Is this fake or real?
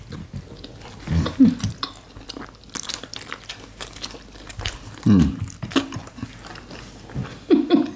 real